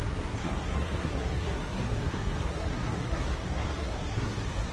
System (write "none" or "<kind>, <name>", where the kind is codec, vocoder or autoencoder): codec, SNAC